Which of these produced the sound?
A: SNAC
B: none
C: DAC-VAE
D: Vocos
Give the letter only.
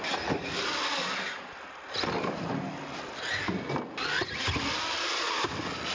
B